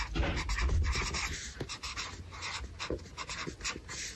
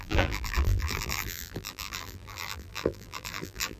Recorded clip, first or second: first